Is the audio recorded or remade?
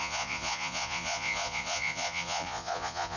remade